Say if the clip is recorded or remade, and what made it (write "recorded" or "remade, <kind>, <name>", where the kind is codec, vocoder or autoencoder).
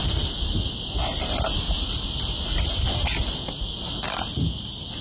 recorded